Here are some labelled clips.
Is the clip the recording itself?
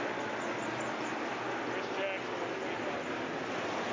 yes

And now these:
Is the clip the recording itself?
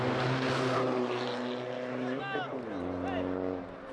yes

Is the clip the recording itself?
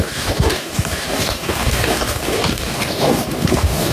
no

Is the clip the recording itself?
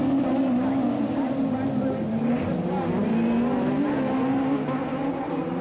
yes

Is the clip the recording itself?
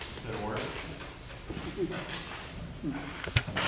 yes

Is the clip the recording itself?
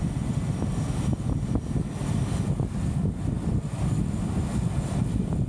yes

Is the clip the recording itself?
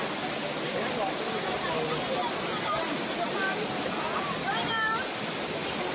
yes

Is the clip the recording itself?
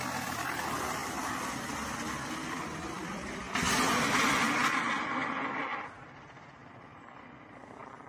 yes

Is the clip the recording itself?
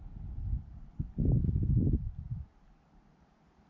yes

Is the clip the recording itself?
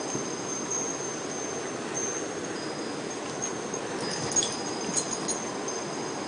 yes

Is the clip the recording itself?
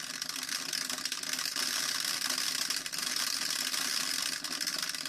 yes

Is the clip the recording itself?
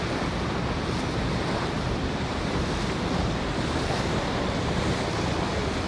no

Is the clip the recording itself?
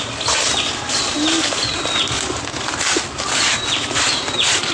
yes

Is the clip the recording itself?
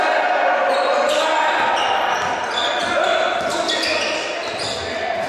yes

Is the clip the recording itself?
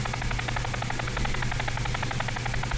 yes